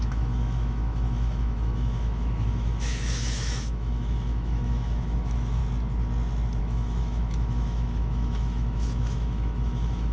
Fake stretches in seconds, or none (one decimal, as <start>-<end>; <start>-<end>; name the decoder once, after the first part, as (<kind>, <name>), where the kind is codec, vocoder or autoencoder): 0.0-5.6 (autoencoder, DAC-VAE); 6.6-10.1